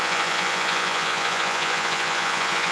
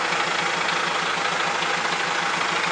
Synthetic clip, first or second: first